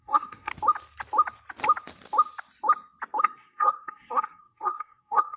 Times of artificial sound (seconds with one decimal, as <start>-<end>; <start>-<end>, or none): 0.0-0.5; 3.2-5.4